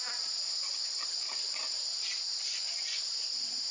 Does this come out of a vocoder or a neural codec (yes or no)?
yes